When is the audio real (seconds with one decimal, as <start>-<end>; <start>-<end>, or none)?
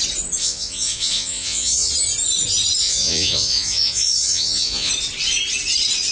0.0-0.4; 1.9-2.8; 4.9-6.1